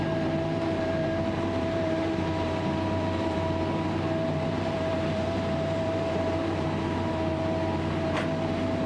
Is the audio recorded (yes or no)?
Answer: no